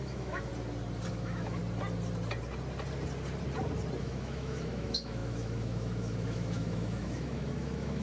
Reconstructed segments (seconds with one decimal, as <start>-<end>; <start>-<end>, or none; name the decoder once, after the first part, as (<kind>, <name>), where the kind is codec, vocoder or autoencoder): 0.0-0.5 (autoencoder, DAC-VAE); 1.1-1.6; 4.0-8.0